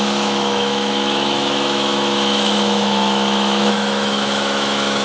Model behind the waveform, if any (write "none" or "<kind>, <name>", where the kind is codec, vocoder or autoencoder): autoencoder, DAC-VAE